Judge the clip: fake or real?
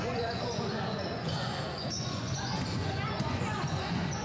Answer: fake